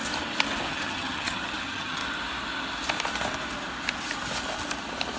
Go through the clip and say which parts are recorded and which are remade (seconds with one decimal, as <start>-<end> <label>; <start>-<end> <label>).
0.0-0.7 recorded; 0.7-2.0 remade; 2.0-5.2 recorded